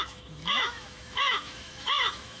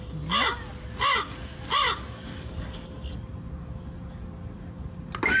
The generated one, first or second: first